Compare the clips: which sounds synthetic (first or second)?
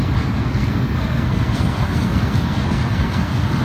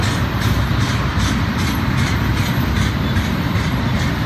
first